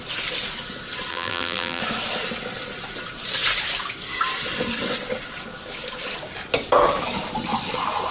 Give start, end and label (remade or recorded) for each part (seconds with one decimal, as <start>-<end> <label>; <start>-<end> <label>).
0.0-1.1 recorded; 1.1-1.8 remade; 1.8-8.1 recorded